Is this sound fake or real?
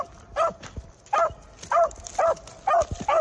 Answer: real